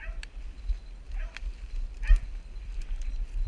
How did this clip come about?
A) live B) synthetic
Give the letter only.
A